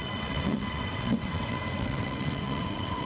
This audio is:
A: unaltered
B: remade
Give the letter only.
B